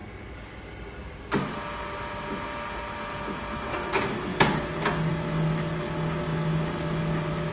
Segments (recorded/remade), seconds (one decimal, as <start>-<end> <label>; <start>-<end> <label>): 0.0-7.5 recorded